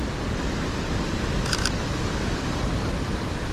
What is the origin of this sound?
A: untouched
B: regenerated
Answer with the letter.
A